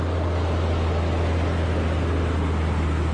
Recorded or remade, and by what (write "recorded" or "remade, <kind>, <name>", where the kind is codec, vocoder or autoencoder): recorded